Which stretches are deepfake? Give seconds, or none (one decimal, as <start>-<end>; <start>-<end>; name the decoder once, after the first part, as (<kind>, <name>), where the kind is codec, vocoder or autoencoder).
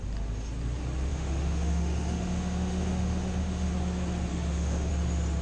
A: 1.1-3.7 (autoencoder, DAC-VAE); 4.3-4.9